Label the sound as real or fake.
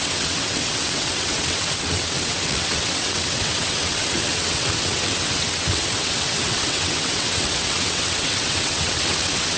fake